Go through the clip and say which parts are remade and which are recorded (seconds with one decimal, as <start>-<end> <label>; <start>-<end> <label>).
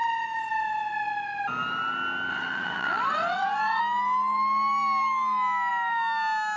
0.0-2.3 recorded; 2.3-3.8 remade; 3.8-6.6 recorded